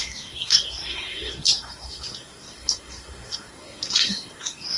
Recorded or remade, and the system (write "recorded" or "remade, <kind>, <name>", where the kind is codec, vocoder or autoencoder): remade, codec, SNAC